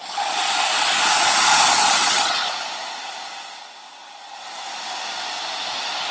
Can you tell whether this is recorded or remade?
recorded